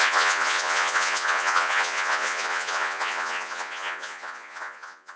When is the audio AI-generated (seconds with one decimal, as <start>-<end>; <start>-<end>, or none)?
0.0-5.2